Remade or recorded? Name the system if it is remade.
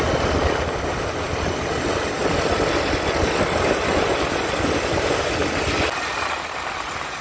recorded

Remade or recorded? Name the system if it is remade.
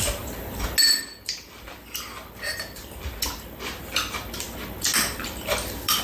recorded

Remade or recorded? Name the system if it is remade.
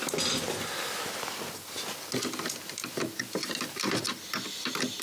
recorded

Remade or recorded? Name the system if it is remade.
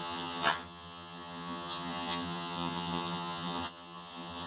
remade, vocoder, HiFi-GAN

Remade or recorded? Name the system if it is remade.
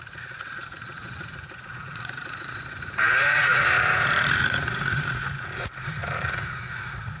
remade, vocoder, Vocos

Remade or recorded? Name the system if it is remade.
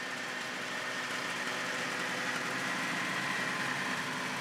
recorded